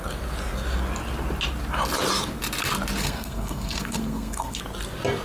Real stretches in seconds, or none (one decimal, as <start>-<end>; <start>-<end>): 0.0-3.0; 4.6-5.2